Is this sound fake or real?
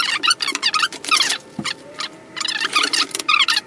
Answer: real